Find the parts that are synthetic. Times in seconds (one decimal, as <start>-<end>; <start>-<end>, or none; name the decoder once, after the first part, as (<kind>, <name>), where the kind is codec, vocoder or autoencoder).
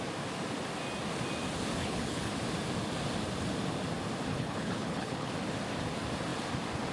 1.8-2.3 (codec, HILCodec); 4.3-5.3